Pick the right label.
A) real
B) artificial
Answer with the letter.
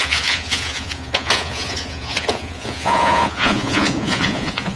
B